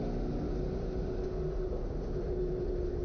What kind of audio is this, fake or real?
real